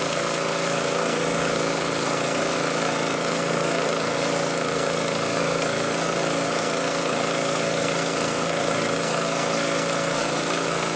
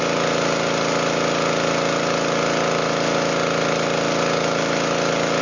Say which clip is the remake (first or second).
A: first